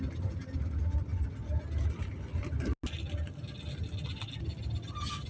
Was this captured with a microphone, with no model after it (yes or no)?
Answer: yes